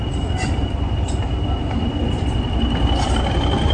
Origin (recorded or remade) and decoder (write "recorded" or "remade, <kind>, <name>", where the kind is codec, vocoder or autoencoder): recorded